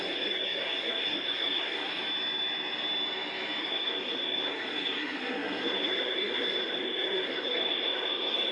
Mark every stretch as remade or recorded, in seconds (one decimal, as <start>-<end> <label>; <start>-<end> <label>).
0.0-2.0 remade; 2.0-3.6 recorded; 3.6-8.5 remade